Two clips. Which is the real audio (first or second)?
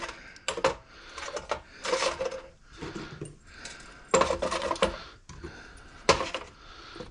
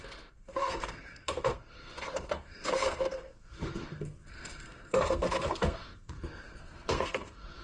first